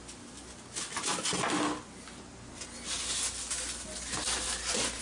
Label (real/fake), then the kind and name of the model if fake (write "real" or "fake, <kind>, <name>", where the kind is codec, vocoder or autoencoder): real